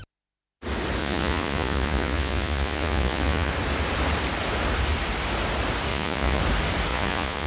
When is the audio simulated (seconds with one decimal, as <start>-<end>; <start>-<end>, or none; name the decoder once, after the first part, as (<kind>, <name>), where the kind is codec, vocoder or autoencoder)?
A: 1.0-3.5 (vocoder, Vocos); 5.9-6.4; 6.9-7.5